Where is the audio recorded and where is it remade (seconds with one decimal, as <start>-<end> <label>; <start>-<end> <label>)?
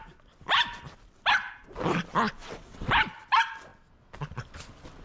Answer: 0.0-2.4 recorded; 2.4-2.9 remade; 2.9-5.0 recorded